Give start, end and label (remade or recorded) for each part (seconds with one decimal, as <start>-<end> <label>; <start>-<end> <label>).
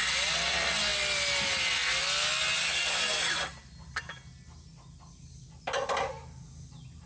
0.0-7.1 recorded